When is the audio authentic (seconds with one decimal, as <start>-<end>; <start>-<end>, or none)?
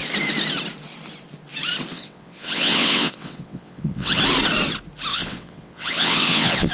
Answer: 0.0-1.9; 4.2-5.1